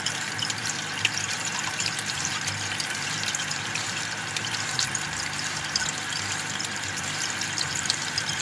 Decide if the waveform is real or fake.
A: fake